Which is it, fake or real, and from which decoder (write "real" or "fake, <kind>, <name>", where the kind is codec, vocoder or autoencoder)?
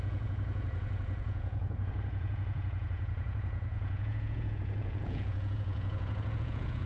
fake, vocoder, Vocos